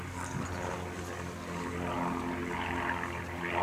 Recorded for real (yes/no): yes